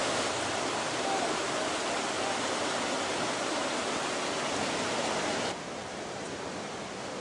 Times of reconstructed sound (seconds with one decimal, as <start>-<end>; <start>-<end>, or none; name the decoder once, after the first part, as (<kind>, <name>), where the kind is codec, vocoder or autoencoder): none